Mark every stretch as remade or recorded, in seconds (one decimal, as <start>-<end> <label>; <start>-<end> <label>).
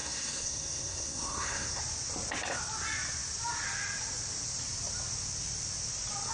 0.0-1.8 remade; 1.8-6.3 recorded